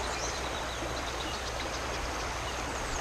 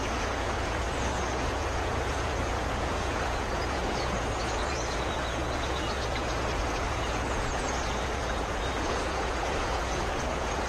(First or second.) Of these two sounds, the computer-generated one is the second